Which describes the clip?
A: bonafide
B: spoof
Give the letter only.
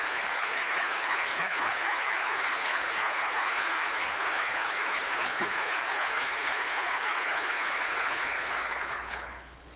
B